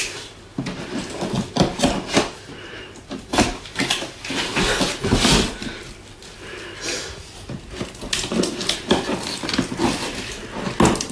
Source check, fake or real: real